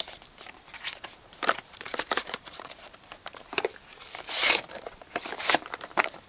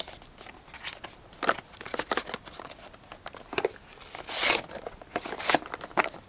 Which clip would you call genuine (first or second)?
second